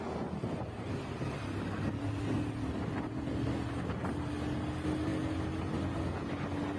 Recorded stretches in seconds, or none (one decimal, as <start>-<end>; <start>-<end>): 0.0-6.8